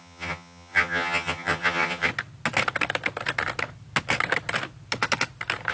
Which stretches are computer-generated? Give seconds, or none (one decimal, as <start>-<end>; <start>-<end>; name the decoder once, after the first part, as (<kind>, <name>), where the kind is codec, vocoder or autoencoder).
0.0-2.1 (vocoder, HiFi-GAN)